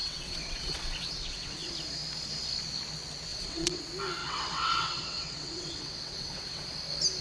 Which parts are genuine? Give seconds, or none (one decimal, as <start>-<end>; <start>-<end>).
1.7-3.3; 3.8-4.2; 6.7-7.2